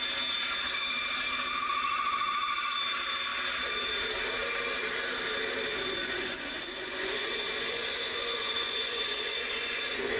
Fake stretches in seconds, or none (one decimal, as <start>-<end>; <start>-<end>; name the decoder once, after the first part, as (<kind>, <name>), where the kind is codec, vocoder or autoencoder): 6.0-10.2 (vocoder, Vocos)